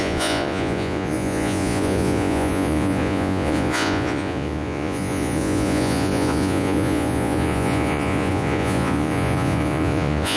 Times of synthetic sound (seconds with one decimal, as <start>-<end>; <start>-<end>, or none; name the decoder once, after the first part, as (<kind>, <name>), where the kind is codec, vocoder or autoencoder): 0.0-10.4 (vocoder, Vocos)

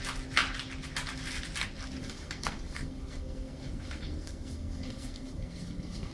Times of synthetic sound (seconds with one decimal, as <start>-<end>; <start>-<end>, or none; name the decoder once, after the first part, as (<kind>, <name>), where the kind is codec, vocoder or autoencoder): 2.0-6.1 (codec, SNAC)

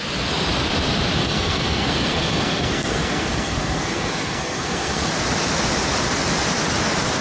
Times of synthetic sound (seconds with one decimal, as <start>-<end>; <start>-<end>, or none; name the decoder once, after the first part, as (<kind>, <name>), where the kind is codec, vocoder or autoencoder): 1.2-5.1 (codec, SNAC)

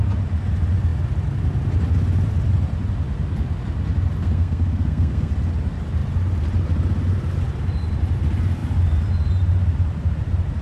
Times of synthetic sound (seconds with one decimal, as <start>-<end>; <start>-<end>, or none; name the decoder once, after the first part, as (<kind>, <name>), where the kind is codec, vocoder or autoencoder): 4.2-5.3 (codec, SNAC)

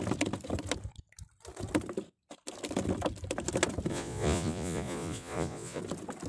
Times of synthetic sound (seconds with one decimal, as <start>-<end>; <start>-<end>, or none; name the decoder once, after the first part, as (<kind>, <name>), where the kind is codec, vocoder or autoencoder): 3.9-5.8 (vocoder, Vocos)

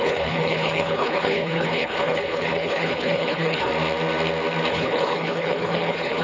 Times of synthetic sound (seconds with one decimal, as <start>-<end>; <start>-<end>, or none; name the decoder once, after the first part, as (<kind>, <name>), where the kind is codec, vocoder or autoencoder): 0.0-3.7 (codec, HILCodec); 4.7-6.2